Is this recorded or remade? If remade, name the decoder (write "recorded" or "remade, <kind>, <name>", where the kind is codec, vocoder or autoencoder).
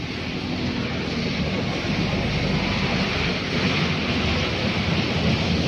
recorded